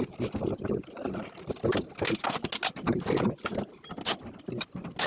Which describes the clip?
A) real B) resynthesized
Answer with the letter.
A